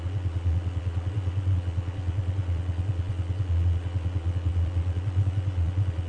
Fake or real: fake